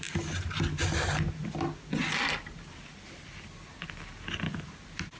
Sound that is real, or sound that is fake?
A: real